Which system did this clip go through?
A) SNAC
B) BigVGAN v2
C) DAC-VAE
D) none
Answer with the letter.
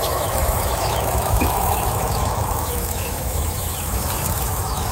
C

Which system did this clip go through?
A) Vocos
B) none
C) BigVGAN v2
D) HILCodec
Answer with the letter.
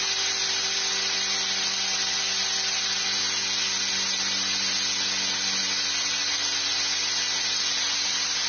B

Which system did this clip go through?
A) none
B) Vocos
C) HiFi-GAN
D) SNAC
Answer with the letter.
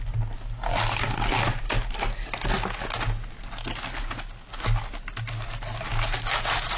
A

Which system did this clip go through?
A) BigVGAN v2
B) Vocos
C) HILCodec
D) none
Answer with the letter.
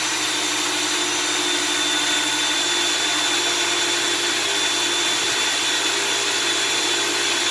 D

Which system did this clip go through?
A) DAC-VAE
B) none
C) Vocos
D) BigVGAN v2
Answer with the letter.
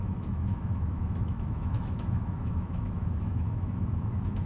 A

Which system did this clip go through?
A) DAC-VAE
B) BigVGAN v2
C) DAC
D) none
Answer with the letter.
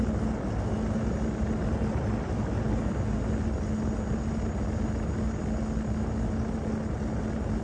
D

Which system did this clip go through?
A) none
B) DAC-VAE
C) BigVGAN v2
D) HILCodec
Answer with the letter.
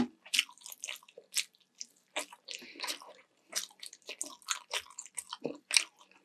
A